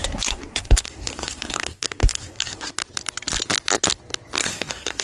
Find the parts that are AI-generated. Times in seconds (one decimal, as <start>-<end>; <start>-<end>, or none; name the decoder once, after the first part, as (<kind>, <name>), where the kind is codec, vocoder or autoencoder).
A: 0.0-2.7 (codec, SNAC); 4.4-5.0